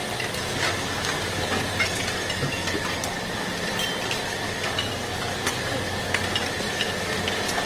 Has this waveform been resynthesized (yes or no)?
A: no